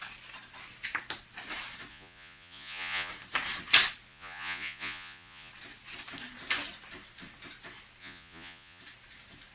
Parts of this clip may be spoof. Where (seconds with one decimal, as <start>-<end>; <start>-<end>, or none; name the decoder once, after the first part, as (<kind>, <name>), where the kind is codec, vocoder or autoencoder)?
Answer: 1.9-3.1 (vocoder, Vocos); 4.1-5.5; 8.0-8.8